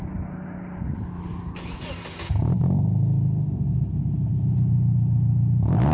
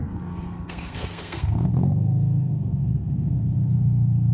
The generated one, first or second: second